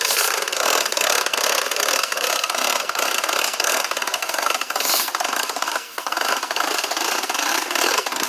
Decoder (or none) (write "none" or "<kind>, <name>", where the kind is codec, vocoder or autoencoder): codec, SNAC